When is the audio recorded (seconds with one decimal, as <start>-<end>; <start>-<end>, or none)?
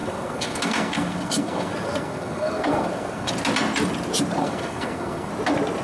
3.3-4.4; 5.3-5.8